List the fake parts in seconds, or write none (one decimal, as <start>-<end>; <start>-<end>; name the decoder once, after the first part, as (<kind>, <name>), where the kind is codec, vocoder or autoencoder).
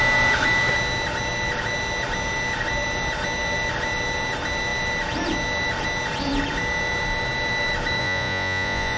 8.0-9.0 (vocoder, Vocos)